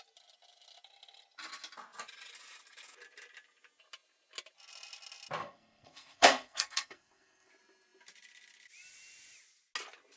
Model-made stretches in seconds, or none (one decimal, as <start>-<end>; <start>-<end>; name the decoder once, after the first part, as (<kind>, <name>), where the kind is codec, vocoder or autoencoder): 5.4-7.5 (codec, SNAC)